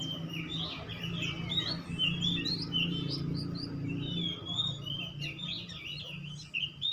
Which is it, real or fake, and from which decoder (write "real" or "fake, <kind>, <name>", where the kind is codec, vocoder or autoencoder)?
real